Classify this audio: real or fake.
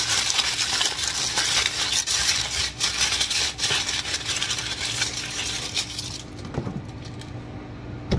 real